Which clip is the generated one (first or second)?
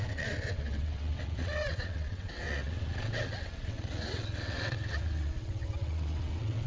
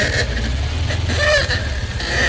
first